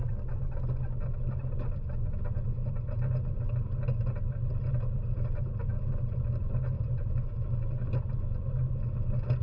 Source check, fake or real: real